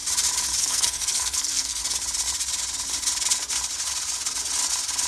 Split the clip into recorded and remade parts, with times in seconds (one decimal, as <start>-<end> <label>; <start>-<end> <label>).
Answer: 0.0-0.6 recorded; 0.6-1.8 remade; 1.8-5.1 recorded